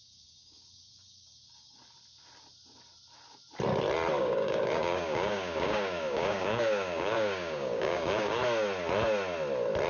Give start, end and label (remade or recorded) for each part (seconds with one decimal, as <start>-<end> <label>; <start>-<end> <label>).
0.0-1.8 remade; 1.8-4.2 recorded; 4.2-8.4 remade; 8.4-9.9 recorded